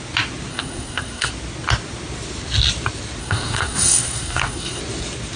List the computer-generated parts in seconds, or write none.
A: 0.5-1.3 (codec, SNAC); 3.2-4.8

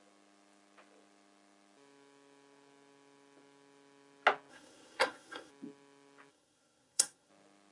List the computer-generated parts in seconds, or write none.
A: 4.5-5.5 (codec, SNAC); 6.3-7.3

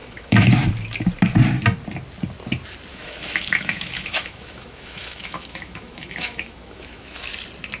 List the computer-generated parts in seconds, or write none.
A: 0.0-0.5 (autoencoder, DAC-VAE); 2.9-7.3

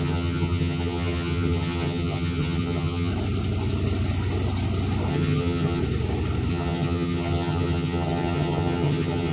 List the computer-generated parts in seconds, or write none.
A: 0.0-3.1 (vocoder, HiFi-GAN); 5.1-5.8; 6.5-9.3